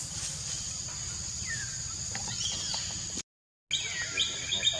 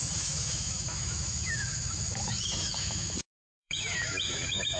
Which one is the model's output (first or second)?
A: second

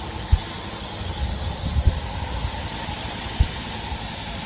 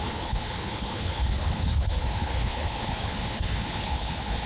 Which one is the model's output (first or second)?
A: second